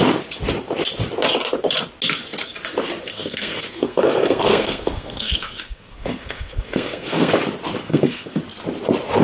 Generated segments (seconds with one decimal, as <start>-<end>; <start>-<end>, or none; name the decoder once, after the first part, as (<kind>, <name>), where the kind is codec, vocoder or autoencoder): 3.1-7.3 (codec, SNAC); 7.8-8.4